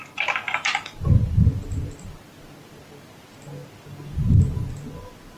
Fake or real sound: real